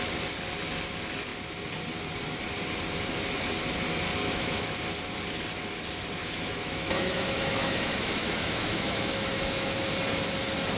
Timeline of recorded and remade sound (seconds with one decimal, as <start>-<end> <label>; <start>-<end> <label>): 0.0-4.2 recorded; 4.2-4.8 remade; 4.8-6.2 recorded; 6.2-9.9 remade; 9.9-10.8 recorded